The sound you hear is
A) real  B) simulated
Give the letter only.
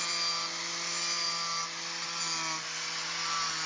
A